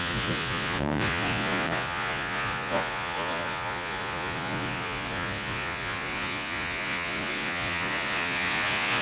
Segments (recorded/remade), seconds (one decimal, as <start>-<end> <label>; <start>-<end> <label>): 0.0-9.0 remade

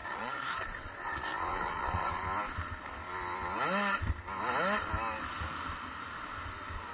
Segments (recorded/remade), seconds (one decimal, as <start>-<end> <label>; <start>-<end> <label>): 0.0-2.2 remade; 2.2-6.9 recorded

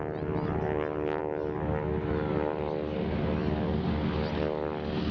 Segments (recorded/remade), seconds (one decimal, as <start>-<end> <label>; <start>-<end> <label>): 0.0-5.1 recorded

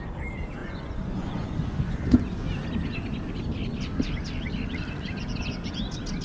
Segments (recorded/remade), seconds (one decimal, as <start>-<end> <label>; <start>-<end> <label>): 0.0-0.6 recorded; 0.6-2.2 remade; 2.2-6.2 recorded